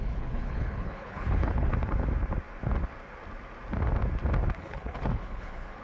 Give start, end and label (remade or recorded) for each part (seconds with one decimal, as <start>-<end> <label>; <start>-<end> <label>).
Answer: 0.0-1.7 remade; 1.7-4.6 recorded; 4.6-5.8 remade

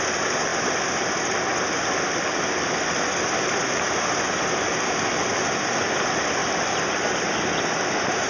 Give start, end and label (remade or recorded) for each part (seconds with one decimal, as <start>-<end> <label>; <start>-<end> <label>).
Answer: 0.0-8.3 recorded

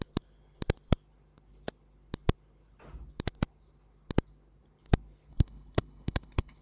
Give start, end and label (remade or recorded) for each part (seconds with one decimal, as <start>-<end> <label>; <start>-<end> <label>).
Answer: 0.0-5.3 recorded; 5.3-6.6 remade

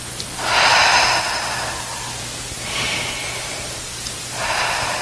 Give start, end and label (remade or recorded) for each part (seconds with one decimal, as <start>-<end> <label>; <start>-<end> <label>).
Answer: 0.0-5.0 recorded